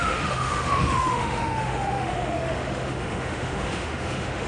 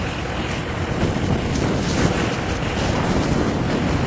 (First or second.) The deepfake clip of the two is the first